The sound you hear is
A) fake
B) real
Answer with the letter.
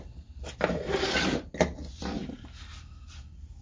B